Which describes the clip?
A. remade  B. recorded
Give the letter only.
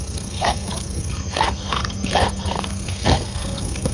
A